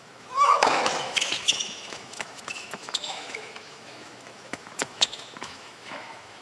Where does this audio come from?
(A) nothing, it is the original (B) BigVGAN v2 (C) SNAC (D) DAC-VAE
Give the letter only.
D